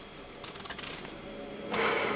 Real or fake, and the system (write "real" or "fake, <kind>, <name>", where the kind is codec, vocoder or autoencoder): real